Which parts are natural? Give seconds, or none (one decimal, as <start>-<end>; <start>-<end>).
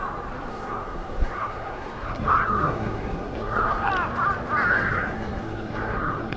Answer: 0.0-0.5; 3.9-4.7